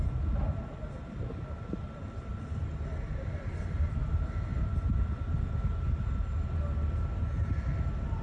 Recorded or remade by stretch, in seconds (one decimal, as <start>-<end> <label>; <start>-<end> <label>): 0.0-2.3 recorded; 2.3-4.1 remade; 4.1-4.5 recorded; 4.5-5.4 remade; 5.4-8.2 recorded